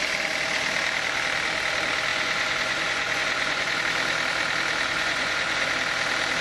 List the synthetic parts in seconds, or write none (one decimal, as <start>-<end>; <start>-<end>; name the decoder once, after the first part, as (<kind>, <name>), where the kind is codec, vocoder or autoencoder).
2.1-3.8 (vocoder, Vocos); 4.9-5.7